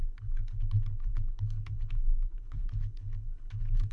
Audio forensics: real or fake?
fake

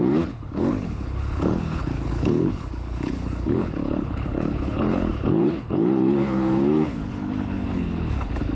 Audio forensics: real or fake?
fake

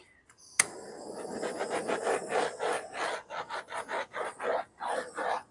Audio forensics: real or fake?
real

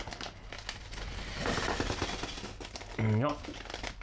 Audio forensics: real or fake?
real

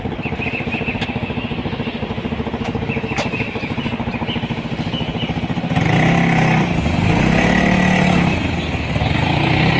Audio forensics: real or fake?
real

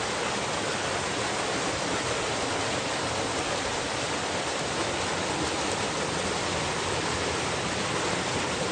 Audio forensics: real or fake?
real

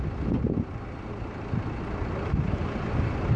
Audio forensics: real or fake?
real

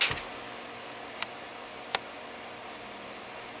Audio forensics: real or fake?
real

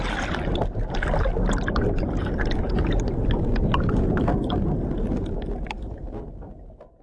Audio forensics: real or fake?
real